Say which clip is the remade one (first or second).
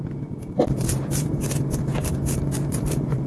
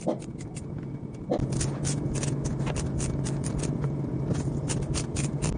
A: first